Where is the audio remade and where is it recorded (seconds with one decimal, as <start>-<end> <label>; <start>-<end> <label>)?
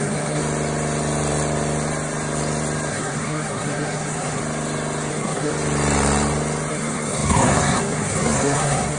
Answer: 0.0-0.4 remade; 0.4-2.9 recorded; 2.9-4.4 remade; 4.4-5.1 recorded; 5.1-5.5 remade; 5.5-6.7 recorded; 6.7-9.0 remade